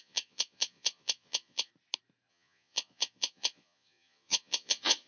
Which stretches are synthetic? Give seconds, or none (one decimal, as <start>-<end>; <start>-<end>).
0.0-1.7; 2.3-5.1